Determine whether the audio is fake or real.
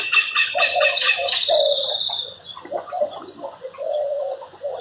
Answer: fake